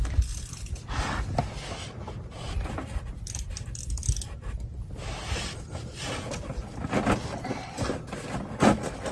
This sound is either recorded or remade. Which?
recorded